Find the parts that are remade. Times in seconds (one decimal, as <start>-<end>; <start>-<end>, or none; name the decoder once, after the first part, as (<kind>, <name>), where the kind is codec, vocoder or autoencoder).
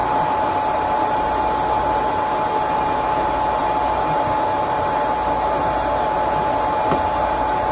none